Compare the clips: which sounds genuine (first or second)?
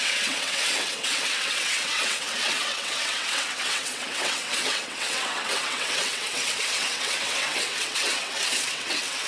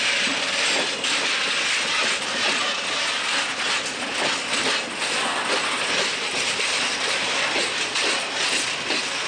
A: second